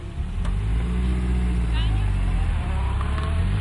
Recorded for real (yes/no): yes